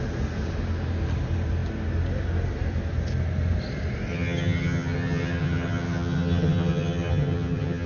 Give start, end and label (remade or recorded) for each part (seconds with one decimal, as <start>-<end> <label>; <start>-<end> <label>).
0.0-4.1 recorded; 4.1-7.9 remade